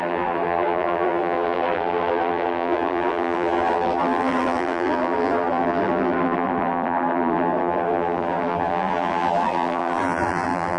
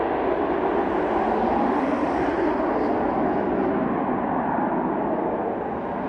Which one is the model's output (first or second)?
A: first